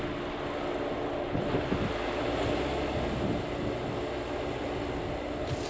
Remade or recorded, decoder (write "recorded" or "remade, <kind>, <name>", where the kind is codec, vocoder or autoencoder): recorded